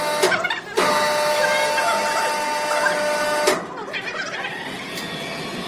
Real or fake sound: real